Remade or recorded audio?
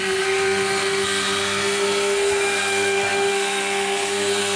remade